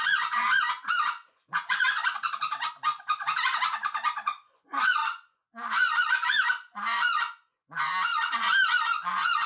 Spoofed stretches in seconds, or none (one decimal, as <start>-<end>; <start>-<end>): 0.0-9.5